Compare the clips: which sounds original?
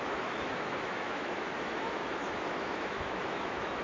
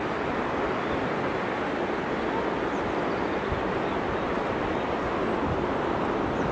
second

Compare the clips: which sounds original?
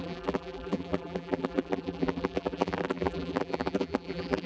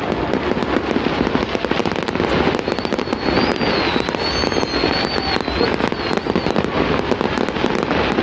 second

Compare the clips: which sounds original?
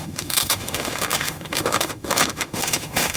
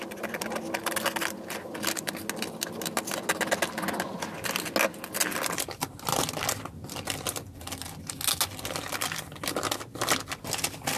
second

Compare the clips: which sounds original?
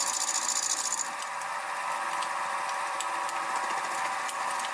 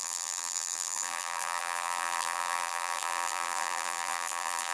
first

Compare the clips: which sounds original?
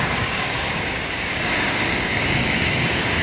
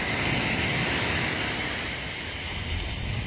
second